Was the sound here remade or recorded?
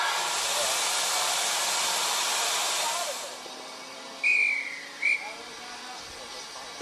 recorded